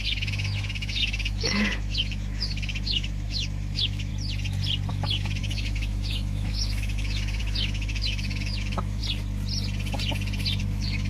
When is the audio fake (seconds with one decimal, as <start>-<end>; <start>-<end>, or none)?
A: 0.0-4.1; 4.9-9.0; 10.6-11.1